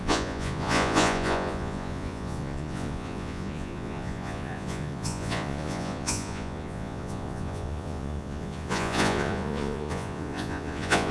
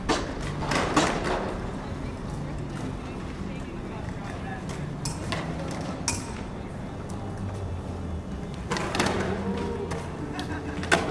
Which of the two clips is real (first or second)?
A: second